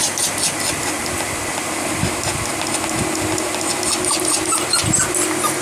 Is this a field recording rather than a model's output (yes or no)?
yes